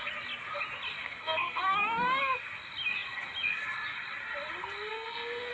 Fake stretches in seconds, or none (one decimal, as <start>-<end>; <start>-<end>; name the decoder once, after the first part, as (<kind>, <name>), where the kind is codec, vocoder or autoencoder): 1.0-2.2 (codec, SNAC); 4.9-5.5